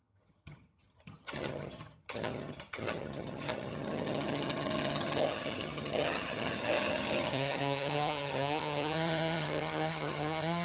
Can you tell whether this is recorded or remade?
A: remade